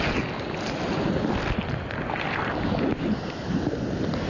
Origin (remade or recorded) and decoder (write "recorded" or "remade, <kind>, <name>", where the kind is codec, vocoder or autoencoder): recorded